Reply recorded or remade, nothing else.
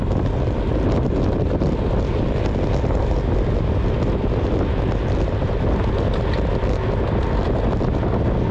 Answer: recorded